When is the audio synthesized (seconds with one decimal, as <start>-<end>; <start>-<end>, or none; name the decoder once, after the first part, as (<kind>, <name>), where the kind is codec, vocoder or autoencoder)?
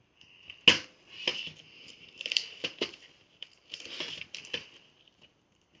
1.3-4.7 (vocoder, BigVGAN v2)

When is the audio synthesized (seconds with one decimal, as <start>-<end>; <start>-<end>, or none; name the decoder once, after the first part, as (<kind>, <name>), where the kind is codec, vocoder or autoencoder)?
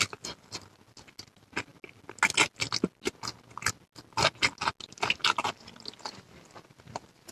none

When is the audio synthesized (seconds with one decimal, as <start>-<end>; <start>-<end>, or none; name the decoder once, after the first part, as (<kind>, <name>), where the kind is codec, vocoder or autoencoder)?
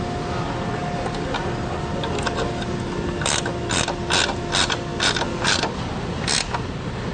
4.9-5.8 (vocoder, BigVGAN v2)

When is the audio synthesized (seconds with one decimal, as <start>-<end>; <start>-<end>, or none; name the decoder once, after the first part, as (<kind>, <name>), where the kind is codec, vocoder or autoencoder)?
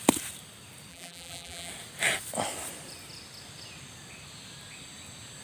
0.9-1.7 (vocoder, BigVGAN v2)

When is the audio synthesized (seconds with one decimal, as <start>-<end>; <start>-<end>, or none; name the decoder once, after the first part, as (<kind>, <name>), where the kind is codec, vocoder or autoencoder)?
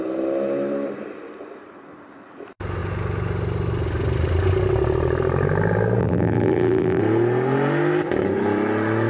6.0-7.0 (vocoder, BigVGAN v2)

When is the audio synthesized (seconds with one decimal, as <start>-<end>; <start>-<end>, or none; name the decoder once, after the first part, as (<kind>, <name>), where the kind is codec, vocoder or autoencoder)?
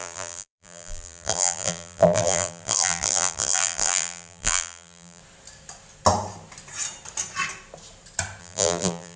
0.0-5.2 (vocoder, BigVGAN v2); 8.4-9.2